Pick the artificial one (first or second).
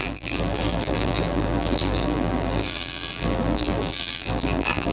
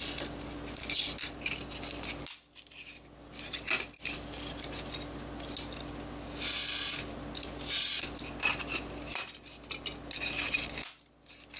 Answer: first